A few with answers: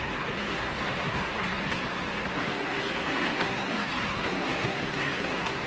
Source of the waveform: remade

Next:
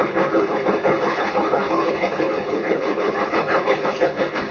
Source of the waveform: remade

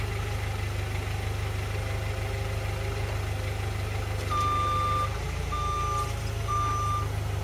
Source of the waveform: recorded